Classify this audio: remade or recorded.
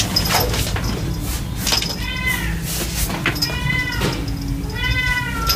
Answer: recorded